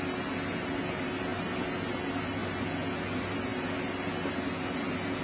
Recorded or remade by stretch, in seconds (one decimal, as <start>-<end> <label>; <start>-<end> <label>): 0.0-5.2 recorded